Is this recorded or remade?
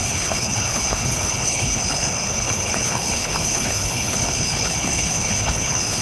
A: remade